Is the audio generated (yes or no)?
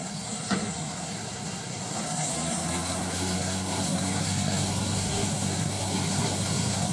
yes